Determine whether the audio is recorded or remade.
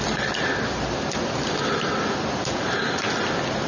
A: recorded